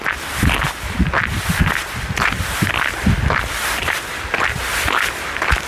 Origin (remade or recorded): recorded